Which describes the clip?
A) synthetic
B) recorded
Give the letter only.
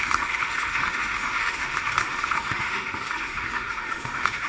A